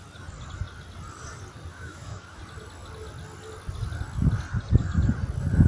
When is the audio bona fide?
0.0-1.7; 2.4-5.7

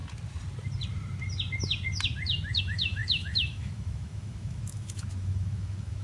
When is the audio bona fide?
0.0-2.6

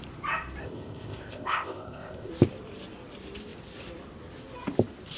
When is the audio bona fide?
0.0-0.6; 2.3-5.2

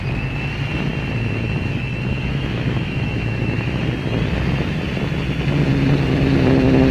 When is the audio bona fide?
0.0-2.1; 3.8-6.9

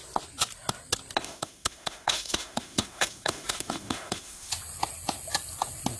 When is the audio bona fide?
0.0-1.2; 4.5-6.0